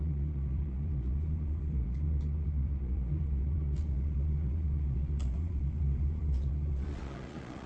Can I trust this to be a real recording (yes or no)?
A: no